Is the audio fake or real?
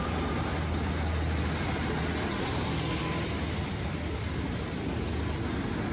real